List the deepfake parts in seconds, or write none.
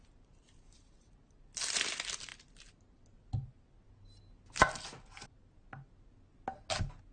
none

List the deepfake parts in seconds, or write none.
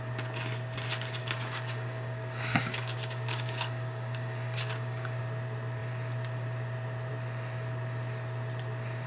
1.2-5.2 (codec, DAC)